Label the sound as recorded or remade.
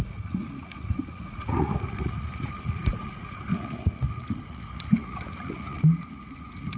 remade